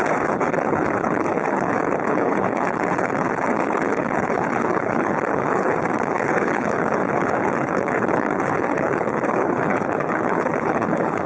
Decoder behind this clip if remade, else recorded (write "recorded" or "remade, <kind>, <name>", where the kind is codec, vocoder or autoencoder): remade, codec, HILCodec